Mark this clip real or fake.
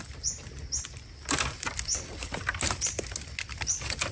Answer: real